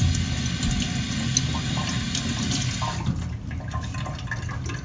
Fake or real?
real